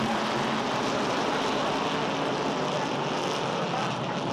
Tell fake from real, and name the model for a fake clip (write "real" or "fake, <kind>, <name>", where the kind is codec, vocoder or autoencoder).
fake, vocoder, BigVGAN v2